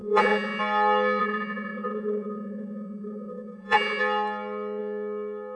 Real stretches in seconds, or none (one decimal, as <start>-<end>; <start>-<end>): 0.6-1.2; 4.0-5.6